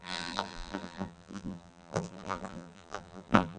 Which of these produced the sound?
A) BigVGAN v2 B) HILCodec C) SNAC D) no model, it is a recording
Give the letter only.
A